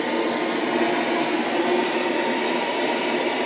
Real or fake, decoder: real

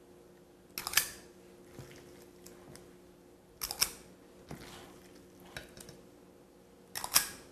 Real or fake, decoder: real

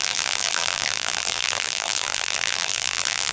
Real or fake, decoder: fake, vocoder, BigVGAN v2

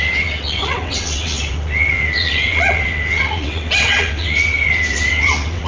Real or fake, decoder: fake, vocoder, WaveNeXt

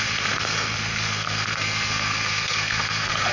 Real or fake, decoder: fake, codec, SNAC